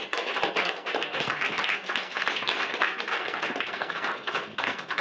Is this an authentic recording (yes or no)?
no